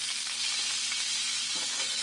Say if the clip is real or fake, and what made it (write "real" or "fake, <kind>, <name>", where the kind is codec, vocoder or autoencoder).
real